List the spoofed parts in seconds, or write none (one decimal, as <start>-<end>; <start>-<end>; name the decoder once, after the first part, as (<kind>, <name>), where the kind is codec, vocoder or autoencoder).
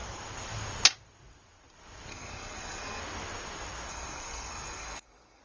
2.1-3.0 (codec, SNAC); 3.9-5.4